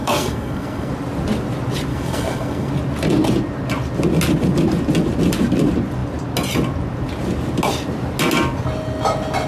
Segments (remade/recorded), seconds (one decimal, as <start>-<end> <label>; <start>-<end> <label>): 0.0-0.9 remade; 0.9-1.9 recorded; 1.9-2.7 remade; 2.7-9.5 recorded